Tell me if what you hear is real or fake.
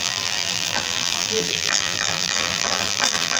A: fake